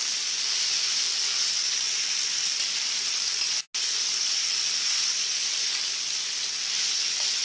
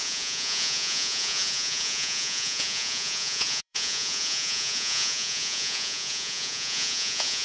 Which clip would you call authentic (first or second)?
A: first